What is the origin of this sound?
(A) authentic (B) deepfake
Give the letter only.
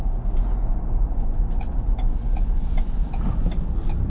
A